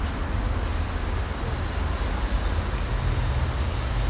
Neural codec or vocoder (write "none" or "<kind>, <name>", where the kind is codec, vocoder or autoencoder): none